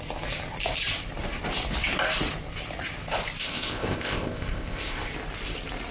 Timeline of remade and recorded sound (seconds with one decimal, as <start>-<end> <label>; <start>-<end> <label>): 0.0-3.4 recorded; 3.4-5.1 remade; 5.1-5.9 recorded